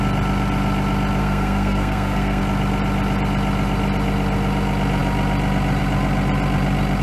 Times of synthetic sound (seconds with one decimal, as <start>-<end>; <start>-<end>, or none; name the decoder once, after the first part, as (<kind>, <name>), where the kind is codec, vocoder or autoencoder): 1.2-2.4 (codec, SNAC)